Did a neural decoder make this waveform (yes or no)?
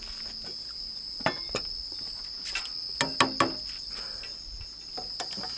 no